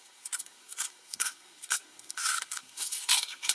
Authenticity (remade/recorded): remade